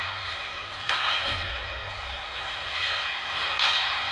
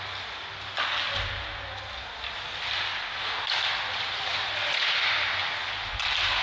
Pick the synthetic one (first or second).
first